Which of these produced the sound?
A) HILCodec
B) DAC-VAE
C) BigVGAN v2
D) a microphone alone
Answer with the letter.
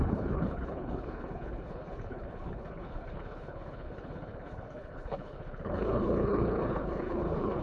A